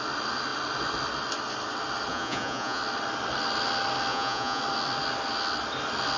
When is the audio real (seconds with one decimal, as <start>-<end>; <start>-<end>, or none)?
0.0-2.1; 2.8-4.1; 4.6-6.2